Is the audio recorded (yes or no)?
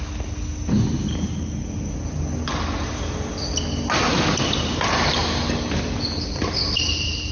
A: yes